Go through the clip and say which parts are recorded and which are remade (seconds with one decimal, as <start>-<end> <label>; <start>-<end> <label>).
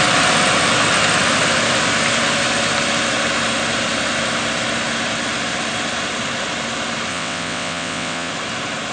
0.0-7.1 recorded; 7.1-8.3 remade; 8.3-8.9 recorded